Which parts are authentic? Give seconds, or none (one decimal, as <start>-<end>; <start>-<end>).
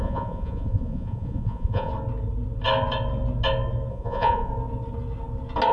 1.9-3.9; 4.5-5.7